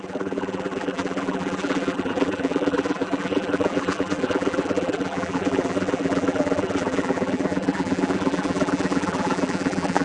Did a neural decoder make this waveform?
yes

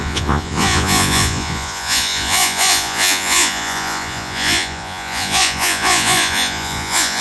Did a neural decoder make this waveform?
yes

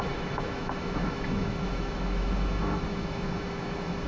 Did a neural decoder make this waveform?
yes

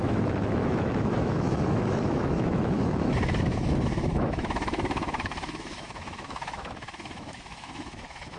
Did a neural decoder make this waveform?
yes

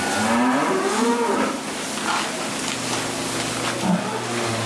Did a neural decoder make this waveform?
no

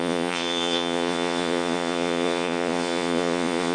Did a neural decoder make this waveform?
yes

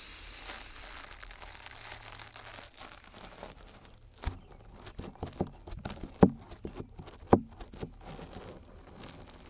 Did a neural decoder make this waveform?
no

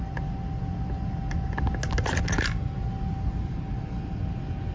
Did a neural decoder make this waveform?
no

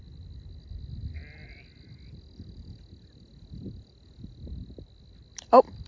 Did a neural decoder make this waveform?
no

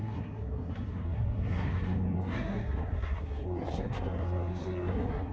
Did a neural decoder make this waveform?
yes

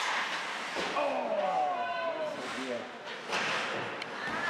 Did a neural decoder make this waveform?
no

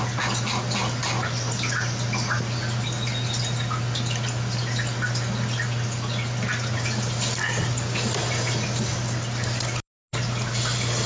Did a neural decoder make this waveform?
no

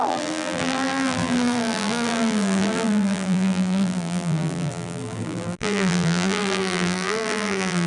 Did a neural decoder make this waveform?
yes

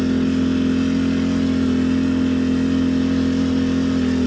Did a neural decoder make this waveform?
no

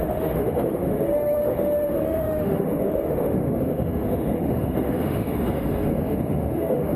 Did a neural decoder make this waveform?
yes